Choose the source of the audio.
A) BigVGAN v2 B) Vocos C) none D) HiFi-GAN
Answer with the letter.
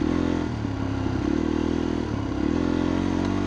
C